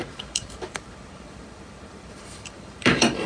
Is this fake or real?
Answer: fake